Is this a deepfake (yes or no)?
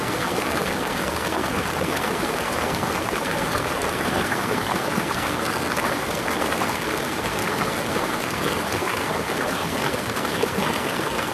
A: yes